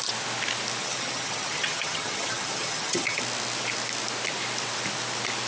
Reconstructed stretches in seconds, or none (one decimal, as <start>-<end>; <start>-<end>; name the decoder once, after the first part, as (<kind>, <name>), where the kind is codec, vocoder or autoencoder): 0.8-3.2 (vocoder, HiFi-GAN)